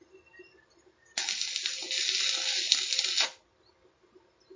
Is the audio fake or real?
real